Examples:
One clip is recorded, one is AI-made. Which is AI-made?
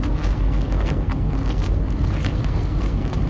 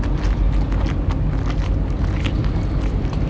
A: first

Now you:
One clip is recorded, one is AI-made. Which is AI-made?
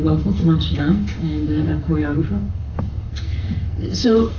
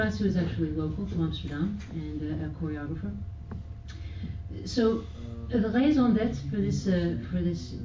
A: first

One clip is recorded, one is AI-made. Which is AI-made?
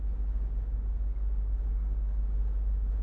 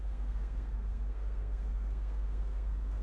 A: second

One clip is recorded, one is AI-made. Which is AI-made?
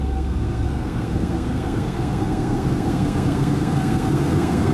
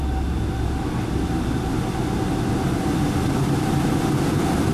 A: first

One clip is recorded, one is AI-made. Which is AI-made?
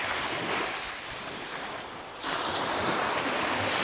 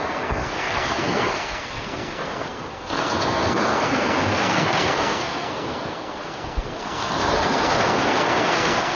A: second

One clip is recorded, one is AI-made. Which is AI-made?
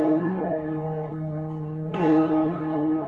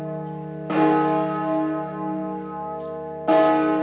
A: first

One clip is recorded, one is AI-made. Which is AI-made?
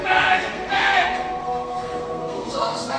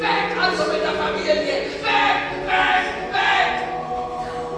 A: first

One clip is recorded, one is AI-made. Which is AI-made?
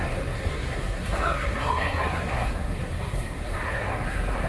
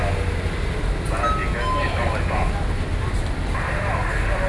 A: first